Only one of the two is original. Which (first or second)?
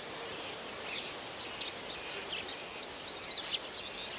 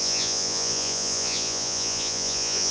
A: first